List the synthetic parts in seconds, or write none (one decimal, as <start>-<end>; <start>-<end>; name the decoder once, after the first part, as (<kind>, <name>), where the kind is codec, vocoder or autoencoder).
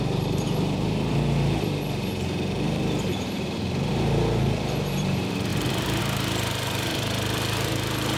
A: 0.0-8.2 (vocoder, BigVGAN v2)